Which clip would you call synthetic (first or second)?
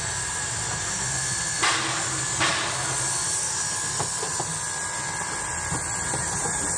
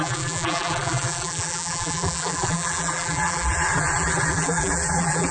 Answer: second